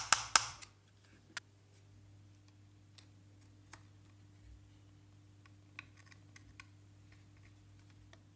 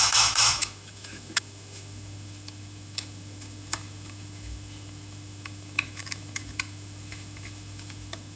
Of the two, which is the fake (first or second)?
second